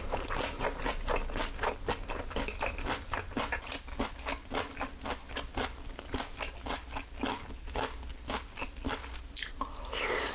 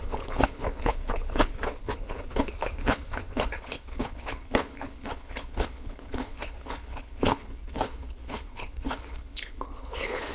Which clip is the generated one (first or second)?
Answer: second